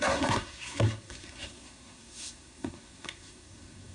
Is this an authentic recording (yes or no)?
no